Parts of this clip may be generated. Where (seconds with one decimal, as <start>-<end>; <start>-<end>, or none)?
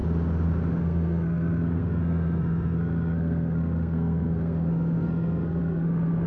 0.8-6.3